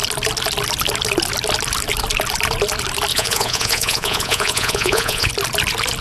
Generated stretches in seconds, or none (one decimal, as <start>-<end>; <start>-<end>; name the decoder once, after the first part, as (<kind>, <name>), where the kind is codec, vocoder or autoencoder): 3.1-5.3 (vocoder, Vocos)